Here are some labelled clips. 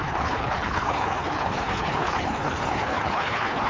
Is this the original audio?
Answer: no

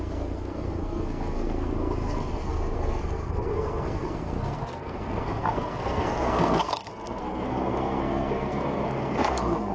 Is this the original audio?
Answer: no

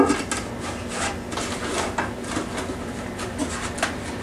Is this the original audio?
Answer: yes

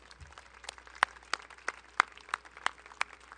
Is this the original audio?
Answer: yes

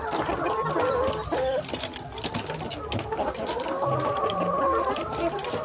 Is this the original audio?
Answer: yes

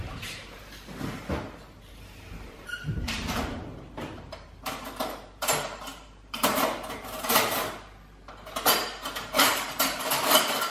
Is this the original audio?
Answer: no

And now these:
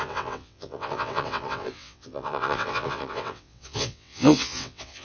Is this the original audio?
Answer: no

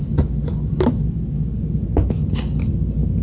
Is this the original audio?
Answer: yes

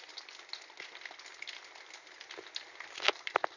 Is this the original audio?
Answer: yes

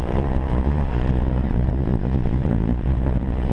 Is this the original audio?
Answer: no